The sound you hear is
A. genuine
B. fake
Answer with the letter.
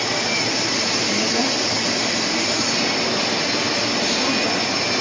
A